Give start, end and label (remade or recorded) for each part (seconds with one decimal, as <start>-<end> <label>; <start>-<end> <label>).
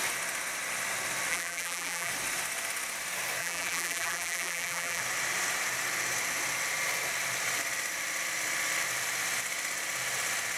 0.0-1.3 recorded; 1.3-2.1 remade; 2.1-3.4 recorded; 3.4-5.0 remade; 5.0-10.6 recorded